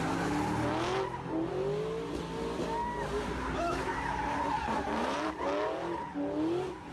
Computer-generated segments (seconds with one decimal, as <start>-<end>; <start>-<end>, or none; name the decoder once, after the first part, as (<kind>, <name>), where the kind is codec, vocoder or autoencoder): 2.8-5.4 (vocoder, BigVGAN v2)